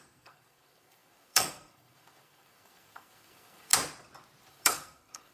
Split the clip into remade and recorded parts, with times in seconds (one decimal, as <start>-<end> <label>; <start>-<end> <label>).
0.0-3.7 remade; 3.7-4.5 recorded; 4.5-5.3 remade